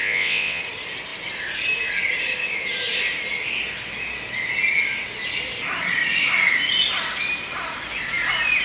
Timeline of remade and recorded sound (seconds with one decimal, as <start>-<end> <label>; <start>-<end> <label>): 0.0-0.6 remade; 0.6-8.6 recorded